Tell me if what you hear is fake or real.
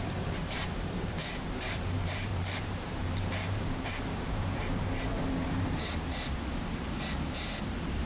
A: fake